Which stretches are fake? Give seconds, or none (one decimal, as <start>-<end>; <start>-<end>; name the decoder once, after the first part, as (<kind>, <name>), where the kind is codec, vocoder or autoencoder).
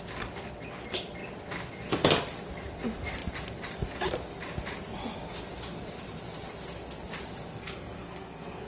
7.6-8.7 (codec, SNAC)